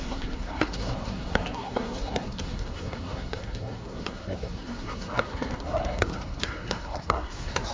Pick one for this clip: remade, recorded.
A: remade